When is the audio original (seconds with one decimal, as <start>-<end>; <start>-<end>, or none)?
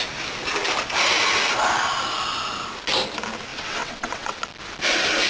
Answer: 0.0-3.5; 4.4-5.3